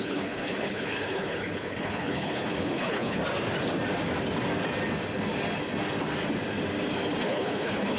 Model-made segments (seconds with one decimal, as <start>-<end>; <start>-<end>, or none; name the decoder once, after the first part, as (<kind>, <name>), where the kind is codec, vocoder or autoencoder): 0.0-3.2 (codec, HILCodec); 7.2-8.0